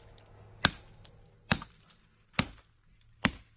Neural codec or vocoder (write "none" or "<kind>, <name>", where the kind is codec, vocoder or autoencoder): none